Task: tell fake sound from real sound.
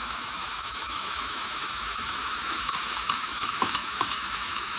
fake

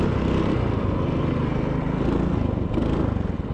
real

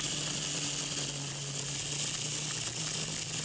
real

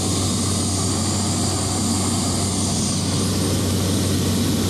real